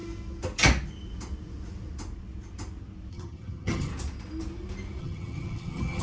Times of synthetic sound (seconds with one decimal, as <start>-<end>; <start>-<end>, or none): 3.1-3.9; 5.0-6.0